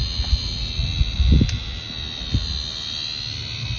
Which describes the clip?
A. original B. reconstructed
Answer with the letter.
A